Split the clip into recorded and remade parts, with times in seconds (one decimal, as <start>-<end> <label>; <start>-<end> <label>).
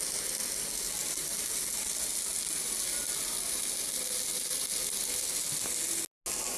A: 0.0-6.6 recorded